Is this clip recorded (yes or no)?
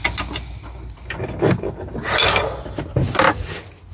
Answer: yes